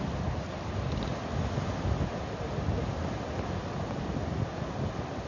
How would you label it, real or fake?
real